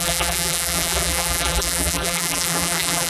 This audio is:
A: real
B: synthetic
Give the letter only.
B